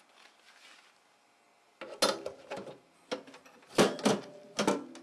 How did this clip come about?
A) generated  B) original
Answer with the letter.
B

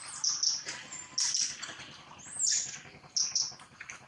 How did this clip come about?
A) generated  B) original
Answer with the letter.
B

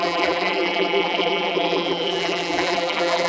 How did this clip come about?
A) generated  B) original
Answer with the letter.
A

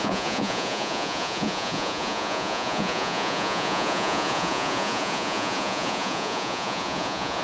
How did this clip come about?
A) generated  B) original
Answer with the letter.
A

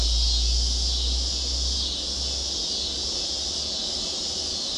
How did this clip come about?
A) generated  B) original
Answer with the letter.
B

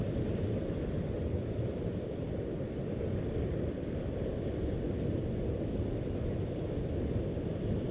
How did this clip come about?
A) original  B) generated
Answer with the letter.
A